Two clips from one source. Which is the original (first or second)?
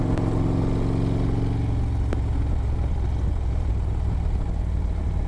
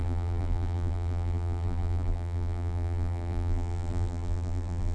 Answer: first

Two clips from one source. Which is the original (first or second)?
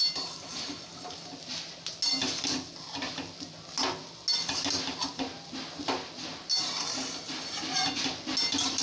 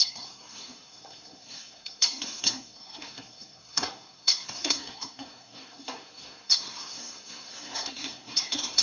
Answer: first